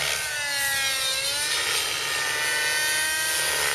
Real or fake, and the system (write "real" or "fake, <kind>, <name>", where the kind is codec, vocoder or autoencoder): real